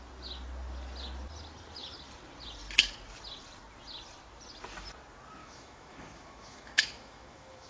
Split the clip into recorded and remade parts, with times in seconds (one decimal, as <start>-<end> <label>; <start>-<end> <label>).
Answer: 0.0-5.4 recorded; 5.4-7.7 remade